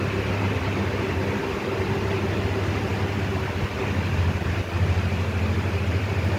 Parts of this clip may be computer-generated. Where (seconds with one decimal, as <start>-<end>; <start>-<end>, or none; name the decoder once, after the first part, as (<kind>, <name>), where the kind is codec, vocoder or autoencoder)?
none